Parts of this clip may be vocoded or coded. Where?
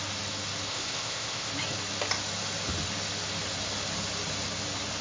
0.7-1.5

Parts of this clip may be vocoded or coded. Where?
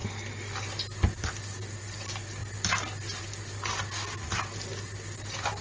none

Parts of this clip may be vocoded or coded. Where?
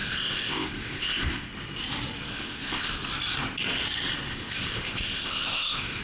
0.0-1.5; 2.3-2.9; 4.3-6.0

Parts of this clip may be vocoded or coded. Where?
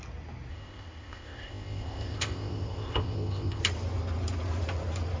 0.5-3.6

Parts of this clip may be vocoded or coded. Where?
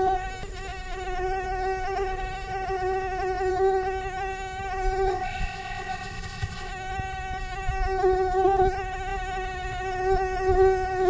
5.1-6.7